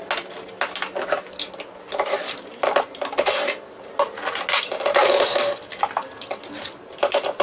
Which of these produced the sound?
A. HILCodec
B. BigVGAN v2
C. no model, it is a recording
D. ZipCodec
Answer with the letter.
C